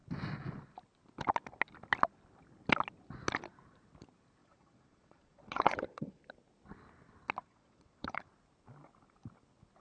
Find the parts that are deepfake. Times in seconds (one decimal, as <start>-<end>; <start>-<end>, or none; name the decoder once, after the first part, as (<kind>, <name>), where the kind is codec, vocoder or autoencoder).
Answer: 4.4-6.2 (vocoder, Vocos); 7.4-8.3